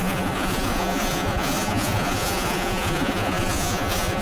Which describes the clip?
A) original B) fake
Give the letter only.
B